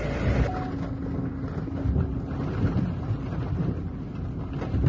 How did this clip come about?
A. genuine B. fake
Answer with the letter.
A